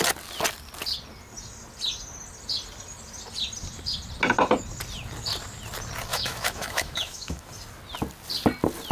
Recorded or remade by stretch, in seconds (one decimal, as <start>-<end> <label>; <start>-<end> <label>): 0.0-6.1 recorded; 6.1-7.5 remade; 7.5-8.9 recorded